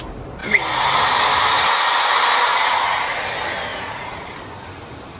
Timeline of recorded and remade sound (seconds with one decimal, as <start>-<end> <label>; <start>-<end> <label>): 0.0-2.5 recorded; 2.5-3.2 remade; 3.2-3.7 recorded; 3.7-4.3 remade; 4.3-5.2 recorded